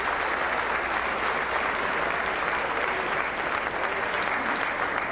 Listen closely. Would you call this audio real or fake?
real